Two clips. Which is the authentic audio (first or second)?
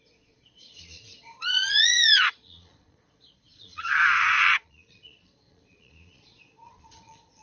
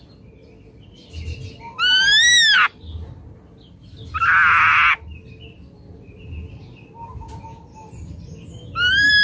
second